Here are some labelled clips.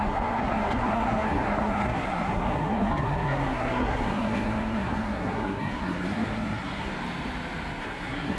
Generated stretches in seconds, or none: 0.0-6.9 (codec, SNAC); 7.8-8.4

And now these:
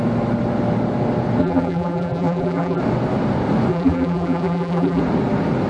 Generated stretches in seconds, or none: 1.4-2.8 (vocoder, BigVGAN v2); 3.7-5.0